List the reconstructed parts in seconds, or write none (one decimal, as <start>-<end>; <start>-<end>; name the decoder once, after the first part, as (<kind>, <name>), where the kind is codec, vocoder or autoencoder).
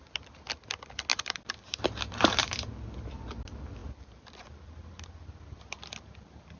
1.1-2.7 (vocoder, BigVGAN v2)